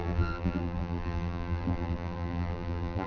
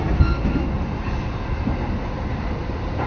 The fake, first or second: first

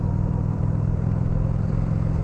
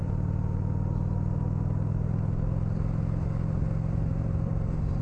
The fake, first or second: first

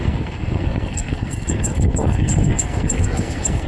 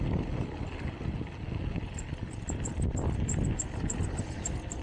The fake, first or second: first